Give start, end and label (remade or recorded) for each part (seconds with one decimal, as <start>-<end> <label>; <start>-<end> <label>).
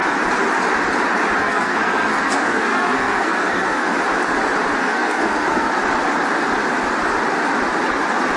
0.0-1.4 recorded; 1.4-3.9 remade; 3.9-4.8 recorded; 4.8-5.7 remade; 5.7-8.4 recorded